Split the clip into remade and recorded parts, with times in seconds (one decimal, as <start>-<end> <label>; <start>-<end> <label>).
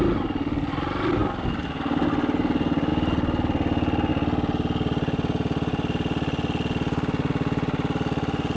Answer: 0.0-8.6 recorded